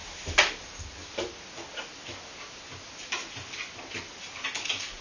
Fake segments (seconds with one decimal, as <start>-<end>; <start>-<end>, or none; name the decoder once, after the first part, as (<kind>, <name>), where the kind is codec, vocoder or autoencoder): none